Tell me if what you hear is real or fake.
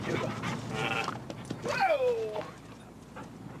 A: real